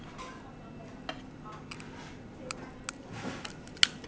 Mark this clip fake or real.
real